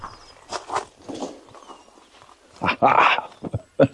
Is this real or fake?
real